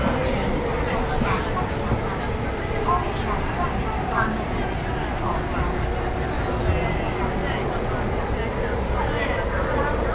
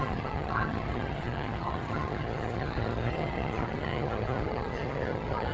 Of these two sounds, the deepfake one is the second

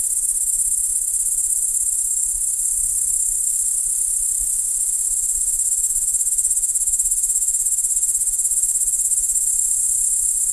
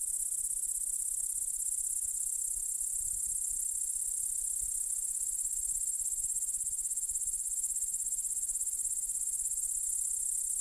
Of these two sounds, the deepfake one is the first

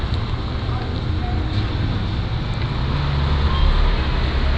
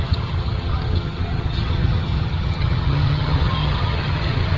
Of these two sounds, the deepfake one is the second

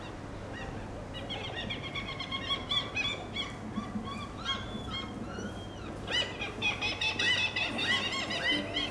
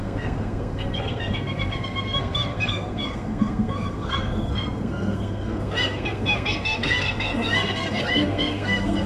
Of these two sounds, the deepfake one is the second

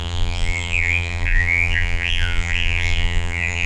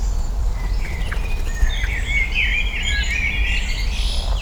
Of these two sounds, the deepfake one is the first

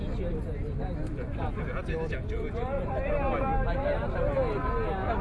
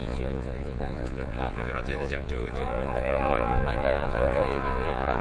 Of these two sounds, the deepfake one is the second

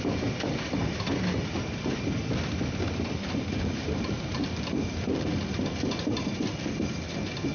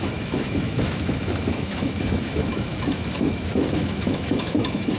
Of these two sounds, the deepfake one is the second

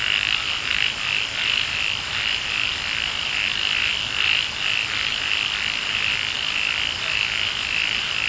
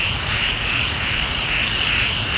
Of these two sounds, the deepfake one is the second